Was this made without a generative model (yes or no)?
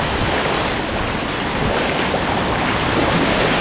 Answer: yes